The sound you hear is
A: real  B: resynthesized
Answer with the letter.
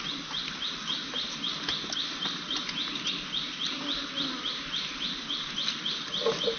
A